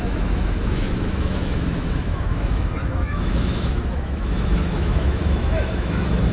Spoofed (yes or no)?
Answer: yes